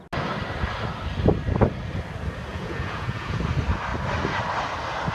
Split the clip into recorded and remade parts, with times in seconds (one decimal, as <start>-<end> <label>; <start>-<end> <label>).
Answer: 0.0-2.5 recorded; 2.5-3.4 remade; 3.4-5.1 recorded